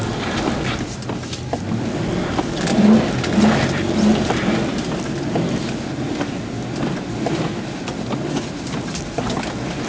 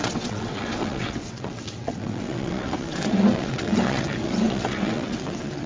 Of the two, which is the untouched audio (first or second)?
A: first